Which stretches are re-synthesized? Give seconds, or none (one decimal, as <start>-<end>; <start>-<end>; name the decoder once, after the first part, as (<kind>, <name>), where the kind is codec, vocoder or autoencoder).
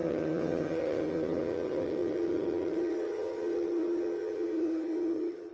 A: 0.0-5.5 (vocoder, HiFi-GAN)